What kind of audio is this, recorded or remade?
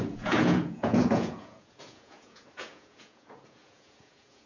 remade